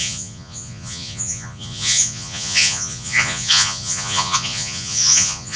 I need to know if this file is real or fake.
fake